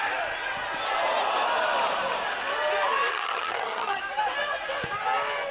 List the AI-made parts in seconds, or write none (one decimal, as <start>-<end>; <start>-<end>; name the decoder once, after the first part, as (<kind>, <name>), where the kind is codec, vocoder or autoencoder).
3.1-4.0 (vocoder, HiFi-GAN)

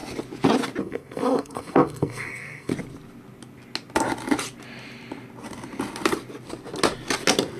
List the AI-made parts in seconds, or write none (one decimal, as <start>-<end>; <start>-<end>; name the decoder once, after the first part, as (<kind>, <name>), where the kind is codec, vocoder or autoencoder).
0.8-2.7 (codec, SNAC)

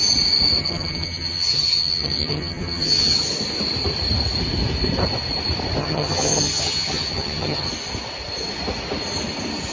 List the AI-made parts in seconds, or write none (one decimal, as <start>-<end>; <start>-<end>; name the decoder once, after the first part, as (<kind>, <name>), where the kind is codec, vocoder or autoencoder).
0.6-3.2 (vocoder, HiFi-GAN); 5.8-7.7

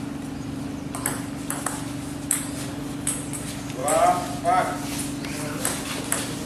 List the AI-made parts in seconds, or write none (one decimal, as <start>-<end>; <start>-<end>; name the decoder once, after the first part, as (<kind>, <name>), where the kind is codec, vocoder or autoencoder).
none